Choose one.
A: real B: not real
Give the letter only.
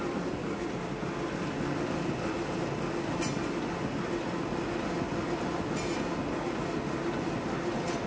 A